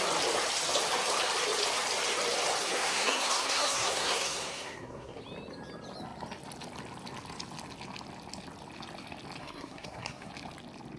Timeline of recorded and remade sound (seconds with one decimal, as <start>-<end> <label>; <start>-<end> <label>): 0.0-2.6 recorded; 2.6-5.2 remade; 5.2-9.4 recorded; 9.4-10.3 remade; 10.3-11.0 recorded